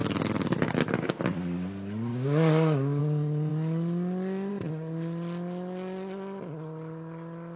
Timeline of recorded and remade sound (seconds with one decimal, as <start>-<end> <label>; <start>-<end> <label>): 0.0-2.1 recorded; 2.1-3.0 remade; 3.0-7.6 recorded